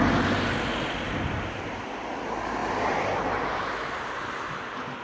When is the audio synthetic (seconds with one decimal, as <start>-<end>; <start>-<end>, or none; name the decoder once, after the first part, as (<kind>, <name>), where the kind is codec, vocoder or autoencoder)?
none